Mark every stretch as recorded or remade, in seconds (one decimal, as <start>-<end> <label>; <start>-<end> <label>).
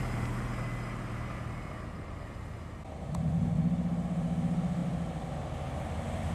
0.0-6.3 recorded